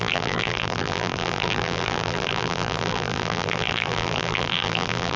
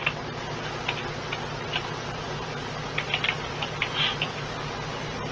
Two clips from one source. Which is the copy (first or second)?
first